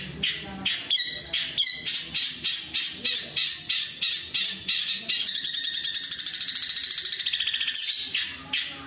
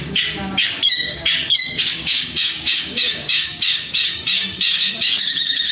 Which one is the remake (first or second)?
second